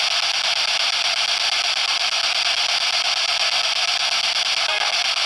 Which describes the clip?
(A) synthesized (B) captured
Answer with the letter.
B